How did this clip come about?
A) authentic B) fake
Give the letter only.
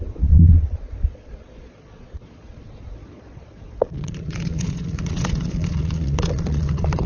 B